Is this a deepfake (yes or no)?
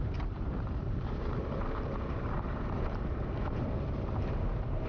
yes